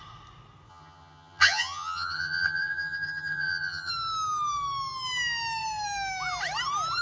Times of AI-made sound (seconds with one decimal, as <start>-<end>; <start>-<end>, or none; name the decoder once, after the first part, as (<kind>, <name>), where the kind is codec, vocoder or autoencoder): 0.7-3.9 (vocoder, HiFi-GAN)